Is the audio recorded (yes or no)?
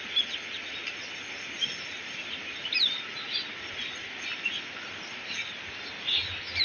yes